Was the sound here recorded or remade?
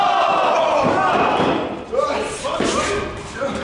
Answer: recorded